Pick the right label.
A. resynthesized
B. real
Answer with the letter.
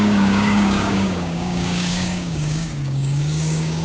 A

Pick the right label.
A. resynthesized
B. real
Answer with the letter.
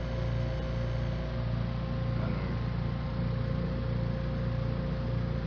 B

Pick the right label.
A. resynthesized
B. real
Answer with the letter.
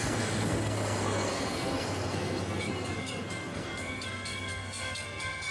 A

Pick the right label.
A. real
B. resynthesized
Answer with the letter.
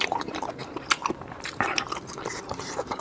B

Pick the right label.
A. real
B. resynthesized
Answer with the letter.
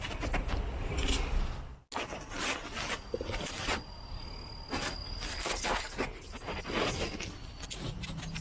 A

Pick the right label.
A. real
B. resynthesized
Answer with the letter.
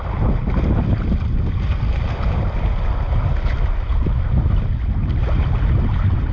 A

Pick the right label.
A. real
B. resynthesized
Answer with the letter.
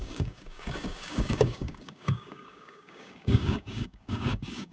B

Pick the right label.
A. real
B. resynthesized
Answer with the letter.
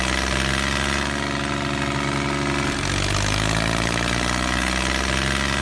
A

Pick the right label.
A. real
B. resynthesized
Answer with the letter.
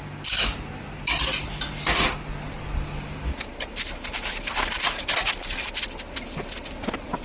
A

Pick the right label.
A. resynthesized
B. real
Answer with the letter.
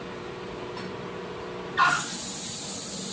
B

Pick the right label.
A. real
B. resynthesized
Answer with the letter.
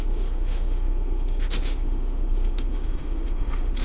B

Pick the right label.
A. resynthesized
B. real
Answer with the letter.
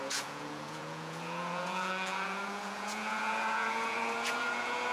A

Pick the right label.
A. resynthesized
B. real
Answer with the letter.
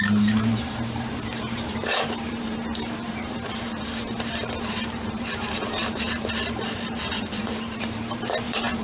A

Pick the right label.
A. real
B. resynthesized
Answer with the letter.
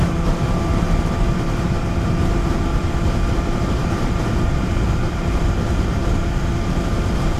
B